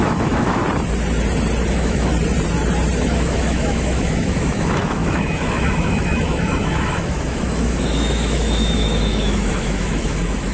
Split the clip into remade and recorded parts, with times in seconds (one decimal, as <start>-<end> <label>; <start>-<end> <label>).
0.0-0.6 remade; 0.6-1.7 recorded; 1.7-2.1 remade; 2.1-3.0 recorded; 3.0-10.5 remade